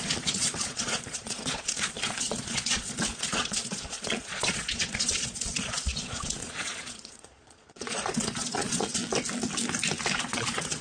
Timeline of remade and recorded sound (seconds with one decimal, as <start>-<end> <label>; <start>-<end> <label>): 0.0-9.0 remade; 9.0-10.2 recorded; 10.2-10.8 remade

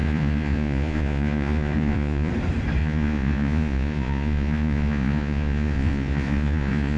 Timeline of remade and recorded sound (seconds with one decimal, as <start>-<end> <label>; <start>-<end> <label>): 0.0-2.3 remade; 2.3-2.8 recorded; 2.8-7.0 remade

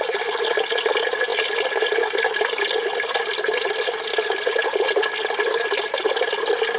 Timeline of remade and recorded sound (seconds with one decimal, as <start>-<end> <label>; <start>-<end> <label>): 0.0-6.8 recorded

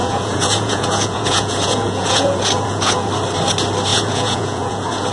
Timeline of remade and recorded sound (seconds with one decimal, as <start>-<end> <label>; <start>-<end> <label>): 0.0-3.1 remade; 3.1-3.9 recorded; 3.9-5.1 remade

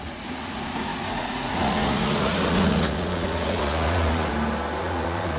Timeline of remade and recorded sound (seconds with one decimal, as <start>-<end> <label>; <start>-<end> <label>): 0.0-4.3 remade; 4.3-4.8 recorded; 4.8-5.4 remade

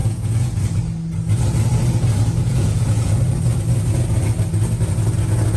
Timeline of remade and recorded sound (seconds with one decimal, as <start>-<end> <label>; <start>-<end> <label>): 0.0-0.6 remade; 0.6-2.4 recorded; 2.4-3.2 remade; 3.2-5.6 recorded

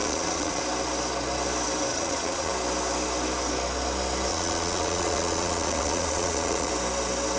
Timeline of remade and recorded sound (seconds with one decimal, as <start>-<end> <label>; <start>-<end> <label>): 0.0-0.6 remade; 0.6-1.9 recorded; 1.9-2.5 remade; 2.5-4.3 recorded; 4.3-6.7 remade; 6.7-7.4 recorded